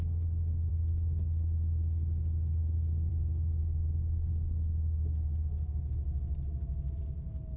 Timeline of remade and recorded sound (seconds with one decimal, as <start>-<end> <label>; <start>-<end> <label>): 0.0-7.6 recorded